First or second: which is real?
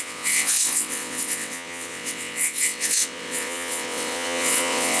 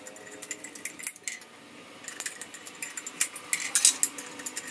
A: second